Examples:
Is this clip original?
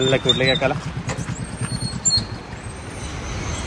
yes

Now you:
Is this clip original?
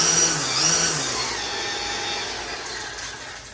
yes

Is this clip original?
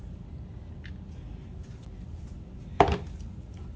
yes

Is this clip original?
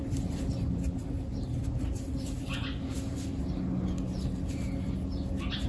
yes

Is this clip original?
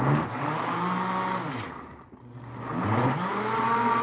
yes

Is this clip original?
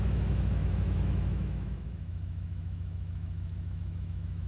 no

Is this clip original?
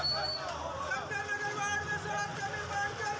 yes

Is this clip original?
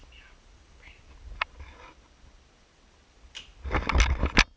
yes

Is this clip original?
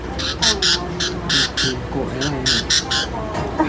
yes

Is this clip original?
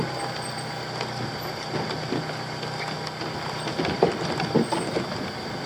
yes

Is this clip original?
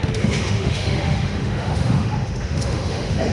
no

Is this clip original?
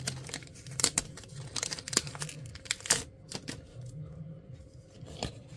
yes